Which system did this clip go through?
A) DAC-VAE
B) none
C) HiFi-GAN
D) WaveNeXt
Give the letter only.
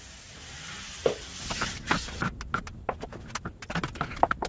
B